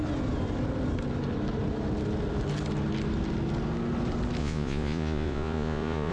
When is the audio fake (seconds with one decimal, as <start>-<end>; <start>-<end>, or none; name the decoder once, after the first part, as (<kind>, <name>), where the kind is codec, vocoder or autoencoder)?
4.4-6.1 (vocoder, Vocos)